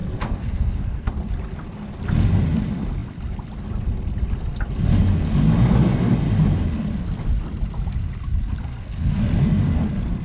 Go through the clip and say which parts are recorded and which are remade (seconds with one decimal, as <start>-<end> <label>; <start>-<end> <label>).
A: 0.0-1.1 remade; 1.1-8.6 recorded; 8.6-9.2 remade; 9.2-10.2 recorded